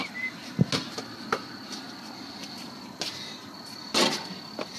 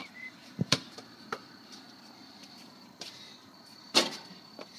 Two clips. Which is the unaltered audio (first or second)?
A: first